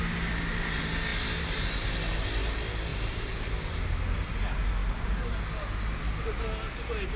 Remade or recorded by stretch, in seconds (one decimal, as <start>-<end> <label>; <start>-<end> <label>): 0.0-2.9 recorded; 2.9-3.5 remade; 3.5-7.2 recorded